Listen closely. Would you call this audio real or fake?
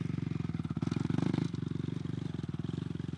real